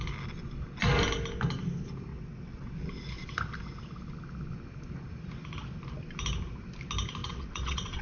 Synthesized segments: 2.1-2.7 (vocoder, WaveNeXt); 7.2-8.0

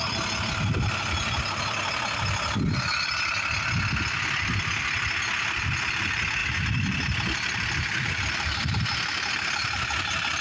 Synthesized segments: 6.4-9.3 (vocoder, BigVGAN v2)

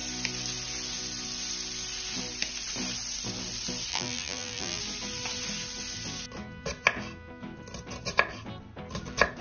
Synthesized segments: 3.9-4.8 (vocoder, BigVGAN v2)

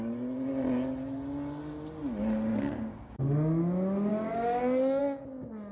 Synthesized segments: 2.5-3.2 (codec, DAC); 4.1-5.0

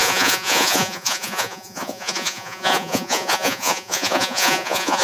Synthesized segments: 0.0-5.0 (vocoder, Vocos)